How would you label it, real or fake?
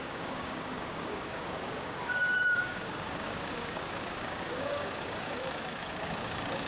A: fake